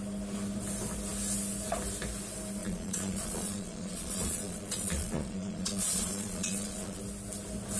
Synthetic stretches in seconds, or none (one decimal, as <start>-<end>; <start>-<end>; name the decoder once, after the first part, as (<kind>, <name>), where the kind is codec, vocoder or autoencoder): 2.6-7.0 (vocoder, Vocos)